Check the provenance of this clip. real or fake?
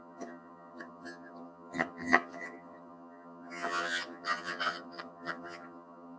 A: fake